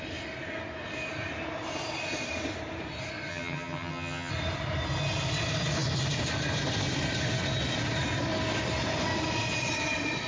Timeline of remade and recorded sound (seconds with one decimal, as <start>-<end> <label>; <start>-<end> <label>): 0.0-3.3 recorded; 3.3-4.3 remade; 4.3-10.3 recorded